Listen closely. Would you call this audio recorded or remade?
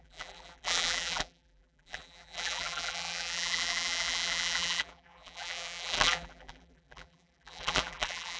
remade